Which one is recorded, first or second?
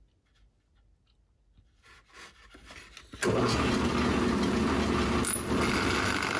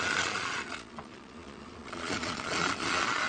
first